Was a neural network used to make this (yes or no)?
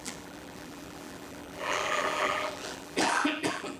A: yes